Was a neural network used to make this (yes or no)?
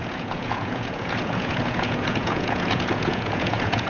yes